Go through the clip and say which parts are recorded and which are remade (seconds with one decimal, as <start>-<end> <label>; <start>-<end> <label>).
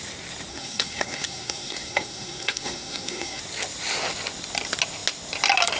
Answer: 0.0-0.5 recorded; 0.5-3.4 remade; 3.4-5.8 recorded